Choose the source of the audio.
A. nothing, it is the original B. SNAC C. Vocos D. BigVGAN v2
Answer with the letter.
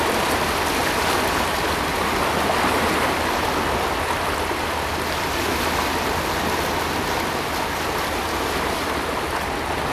A